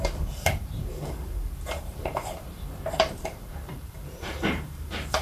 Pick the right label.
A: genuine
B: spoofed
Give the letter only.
B